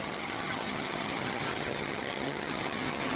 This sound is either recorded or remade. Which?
remade